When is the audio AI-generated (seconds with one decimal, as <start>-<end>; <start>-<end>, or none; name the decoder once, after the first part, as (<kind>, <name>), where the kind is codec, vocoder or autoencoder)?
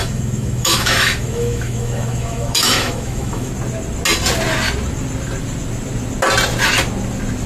0.0-3.5 (autoencoder, DAC-VAE)